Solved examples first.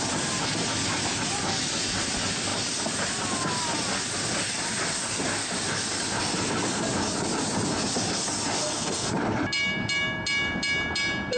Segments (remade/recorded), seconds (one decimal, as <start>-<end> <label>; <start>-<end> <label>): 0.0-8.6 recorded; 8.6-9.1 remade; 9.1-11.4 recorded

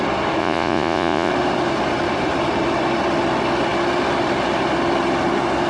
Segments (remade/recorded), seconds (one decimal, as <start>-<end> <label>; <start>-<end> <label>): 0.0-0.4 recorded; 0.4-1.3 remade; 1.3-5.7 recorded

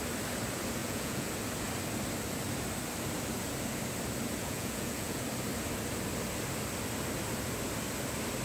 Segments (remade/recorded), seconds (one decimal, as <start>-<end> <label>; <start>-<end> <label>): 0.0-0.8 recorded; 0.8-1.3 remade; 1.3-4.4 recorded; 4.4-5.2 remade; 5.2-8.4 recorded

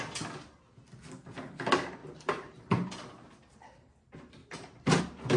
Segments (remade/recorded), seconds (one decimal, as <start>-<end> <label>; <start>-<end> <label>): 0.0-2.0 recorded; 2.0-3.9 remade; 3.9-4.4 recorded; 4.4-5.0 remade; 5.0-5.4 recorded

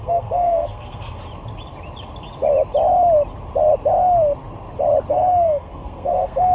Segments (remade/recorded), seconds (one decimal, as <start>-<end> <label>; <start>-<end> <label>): 0.0-1.2 remade; 1.2-5.1 recorded; 5.1-6.5 remade

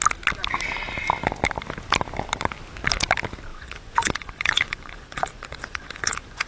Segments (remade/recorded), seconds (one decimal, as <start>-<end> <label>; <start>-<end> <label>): 0.0-3.5 recorded; 3.5-6.5 remade

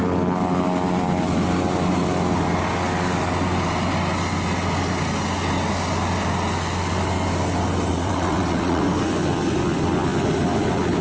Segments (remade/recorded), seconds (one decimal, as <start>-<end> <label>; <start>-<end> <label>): 0.0-7.9 recorded; 7.9-8.8 remade; 8.8-11.0 recorded